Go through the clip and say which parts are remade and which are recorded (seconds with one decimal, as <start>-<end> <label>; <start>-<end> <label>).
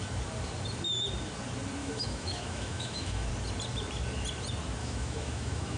0.0-1.8 recorded; 1.8-3.3 remade; 3.3-4.8 recorded; 4.8-5.8 remade